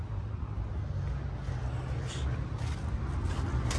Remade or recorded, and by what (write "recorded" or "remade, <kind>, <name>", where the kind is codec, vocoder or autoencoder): recorded